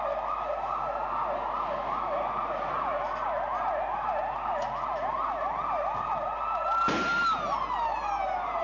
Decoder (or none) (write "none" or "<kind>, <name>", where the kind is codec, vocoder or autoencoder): none